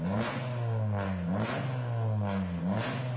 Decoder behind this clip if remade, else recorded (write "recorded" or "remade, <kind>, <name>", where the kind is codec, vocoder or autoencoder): recorded